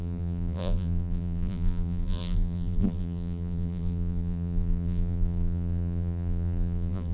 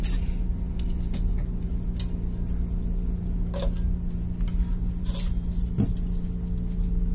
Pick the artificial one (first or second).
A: first